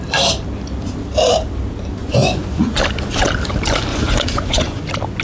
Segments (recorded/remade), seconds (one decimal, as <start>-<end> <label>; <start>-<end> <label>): 0.0-2.0 recorded; 2.0-2.8 remade; 2.8-3.9 recorded; 3.9-4.8 remade; 4.8-5.2 recorded